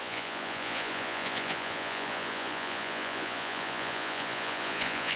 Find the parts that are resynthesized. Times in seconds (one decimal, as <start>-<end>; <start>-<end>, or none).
0.0-5.2